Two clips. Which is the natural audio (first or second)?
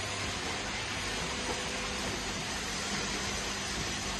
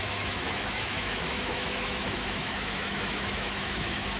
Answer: first